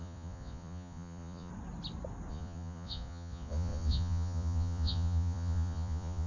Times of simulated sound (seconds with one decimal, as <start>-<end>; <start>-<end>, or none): 0.0-1.5; 2.3-6.3